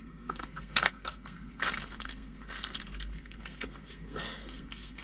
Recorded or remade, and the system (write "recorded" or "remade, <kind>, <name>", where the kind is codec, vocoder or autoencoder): remade, codec, SNAC